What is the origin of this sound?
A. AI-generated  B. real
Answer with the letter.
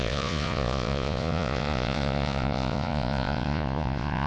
A